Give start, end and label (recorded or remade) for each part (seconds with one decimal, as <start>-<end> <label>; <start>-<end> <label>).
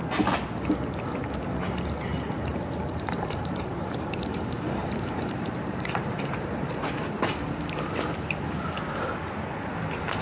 0.0-2.5 recorded; 2.5-7.3 remade; 7.3-10.2 recorded